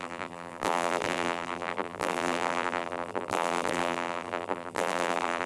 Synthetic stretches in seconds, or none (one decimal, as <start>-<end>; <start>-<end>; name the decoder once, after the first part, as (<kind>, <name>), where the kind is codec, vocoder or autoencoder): 0.0-5.5 (vocoder, BigVGAN v2)